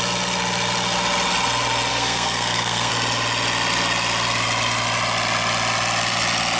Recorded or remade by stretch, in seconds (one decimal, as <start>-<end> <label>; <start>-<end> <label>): 0.0-1.9 recorded; 1.9-2.9 remade; 2.9-6.6 recorded